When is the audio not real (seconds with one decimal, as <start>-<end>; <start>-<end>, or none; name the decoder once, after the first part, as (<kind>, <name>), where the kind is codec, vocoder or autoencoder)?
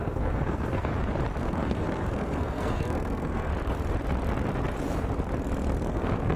0.0-0.9 (codec, SNAC); 1.4-3.5; 5.9-6.4